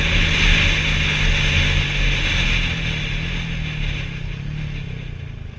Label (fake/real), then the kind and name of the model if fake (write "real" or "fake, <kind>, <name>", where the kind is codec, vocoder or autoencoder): real